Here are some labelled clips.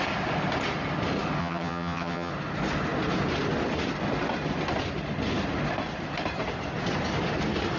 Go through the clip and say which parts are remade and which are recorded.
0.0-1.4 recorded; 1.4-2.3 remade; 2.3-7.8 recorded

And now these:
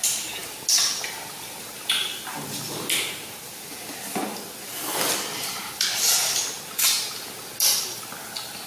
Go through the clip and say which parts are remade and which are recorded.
0.0-5.3 recorded; 5.3-6.3 remade; 6.3-8.7 recorded

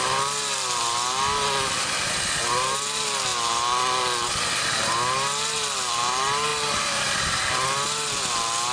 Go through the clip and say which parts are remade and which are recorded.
0.0-6.5 recorded; 6.5-7.4 remade; 7.4-8.7 recorded